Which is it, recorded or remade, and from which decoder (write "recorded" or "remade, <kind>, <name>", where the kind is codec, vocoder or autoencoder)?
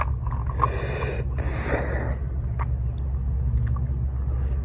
recorded